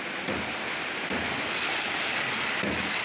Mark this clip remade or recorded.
remade